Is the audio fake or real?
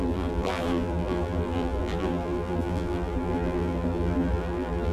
fake